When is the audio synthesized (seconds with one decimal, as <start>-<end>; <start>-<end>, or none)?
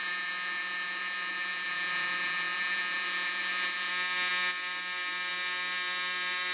0.0-3.9